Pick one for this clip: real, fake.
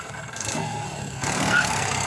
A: fake